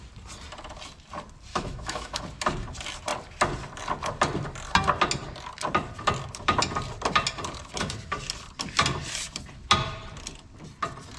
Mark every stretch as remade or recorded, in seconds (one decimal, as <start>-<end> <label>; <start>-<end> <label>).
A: 0.0-1.5 recorded; 1.5-2.2 remade; 2.2-11.2 recorded